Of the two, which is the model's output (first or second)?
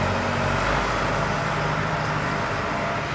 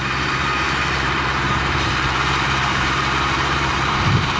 second